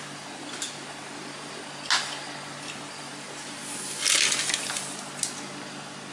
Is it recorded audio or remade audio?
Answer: recorded